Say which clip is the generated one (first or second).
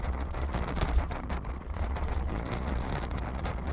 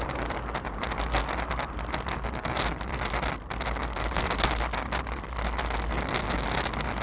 first